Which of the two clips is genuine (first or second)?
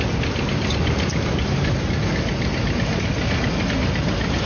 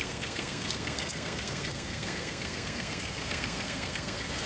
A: first